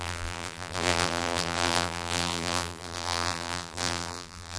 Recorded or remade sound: remade